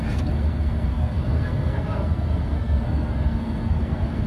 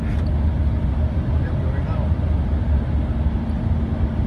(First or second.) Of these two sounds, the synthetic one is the first